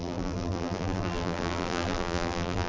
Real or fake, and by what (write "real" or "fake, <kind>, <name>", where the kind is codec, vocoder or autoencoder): fake, vocoder, BigVGAN v2